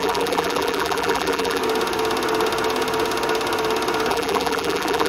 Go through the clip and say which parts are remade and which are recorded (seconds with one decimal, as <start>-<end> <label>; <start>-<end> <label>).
0.0-1.6 remade; 1.6-4.1 recorded; 4.1-5.1 remade